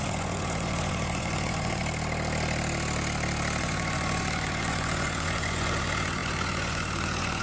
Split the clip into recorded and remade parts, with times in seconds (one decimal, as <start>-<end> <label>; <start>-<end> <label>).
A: 0.0-1.8 remade; 1.8-3.6 recorded; 3.6-7.4 remade